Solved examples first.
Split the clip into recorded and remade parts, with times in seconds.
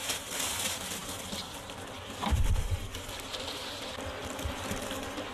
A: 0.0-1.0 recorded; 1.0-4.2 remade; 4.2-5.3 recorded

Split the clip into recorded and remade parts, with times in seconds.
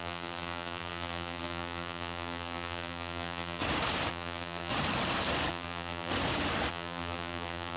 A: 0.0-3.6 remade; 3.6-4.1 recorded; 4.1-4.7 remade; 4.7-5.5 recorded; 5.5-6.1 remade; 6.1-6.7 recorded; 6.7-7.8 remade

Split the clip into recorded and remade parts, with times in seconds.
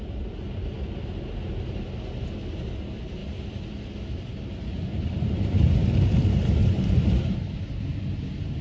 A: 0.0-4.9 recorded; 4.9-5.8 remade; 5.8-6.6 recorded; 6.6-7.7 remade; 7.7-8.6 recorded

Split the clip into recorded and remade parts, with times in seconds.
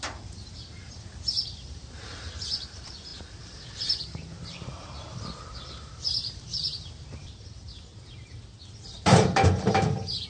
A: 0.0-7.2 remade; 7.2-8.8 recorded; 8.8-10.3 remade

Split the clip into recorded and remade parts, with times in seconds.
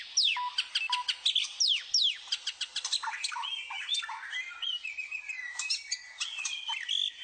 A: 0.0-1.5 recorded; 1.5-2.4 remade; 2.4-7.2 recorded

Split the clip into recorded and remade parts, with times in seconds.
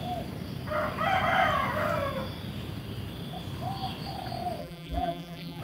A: 0.0-4.6 recorded; 4.6-5.6 remade